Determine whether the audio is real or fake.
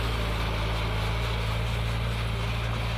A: real